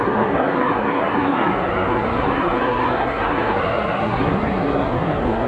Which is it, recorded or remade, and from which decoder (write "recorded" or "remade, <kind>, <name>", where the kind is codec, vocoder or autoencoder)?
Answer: remade, codec, SNAC